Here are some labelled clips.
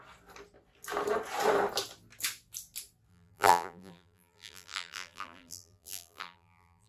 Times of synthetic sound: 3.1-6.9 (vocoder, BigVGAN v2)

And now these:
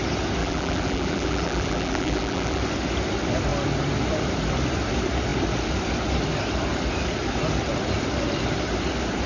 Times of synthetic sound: 0.4-2.6 (vocoder, BigVGAN v2)